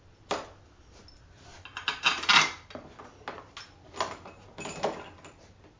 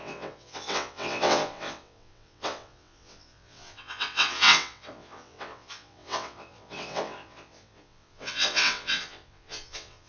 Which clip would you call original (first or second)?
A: first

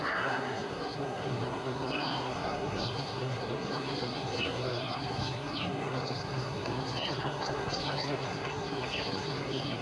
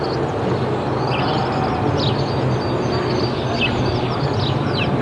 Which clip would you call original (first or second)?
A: second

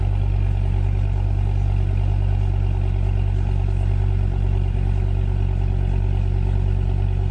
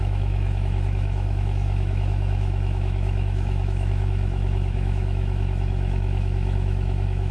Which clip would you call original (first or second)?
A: first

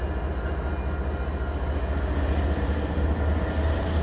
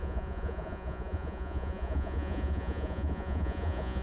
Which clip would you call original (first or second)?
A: first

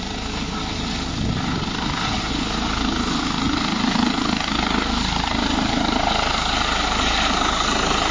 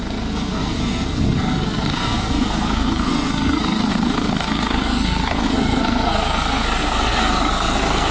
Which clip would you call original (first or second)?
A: first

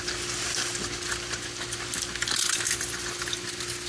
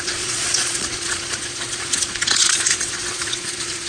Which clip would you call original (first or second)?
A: first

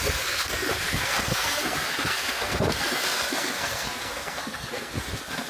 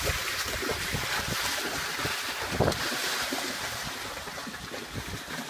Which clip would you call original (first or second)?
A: second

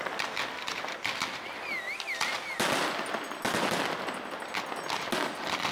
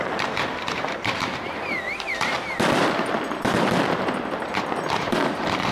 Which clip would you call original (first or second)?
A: first